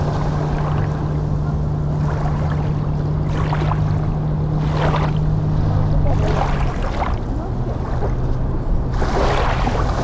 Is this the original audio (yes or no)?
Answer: yes